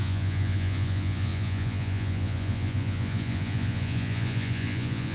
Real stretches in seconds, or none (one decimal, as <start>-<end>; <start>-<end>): none

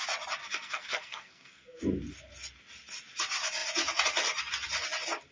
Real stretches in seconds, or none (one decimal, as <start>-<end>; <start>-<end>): 0.0-0.4; 1.8-5.3

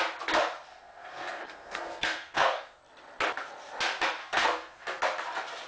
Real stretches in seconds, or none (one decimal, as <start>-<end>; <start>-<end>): 0.0-0.7; 2.8-4.2; 5.0-5.7

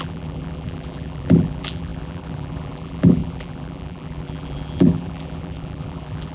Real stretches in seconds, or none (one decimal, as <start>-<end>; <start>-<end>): none

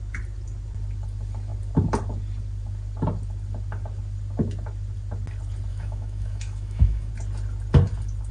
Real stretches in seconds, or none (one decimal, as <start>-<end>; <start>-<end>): 0.0-5.7; 7.1-8.3

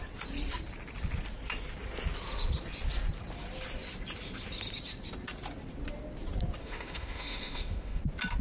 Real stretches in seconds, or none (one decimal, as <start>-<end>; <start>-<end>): 0.0-6.6; 8.0-8.4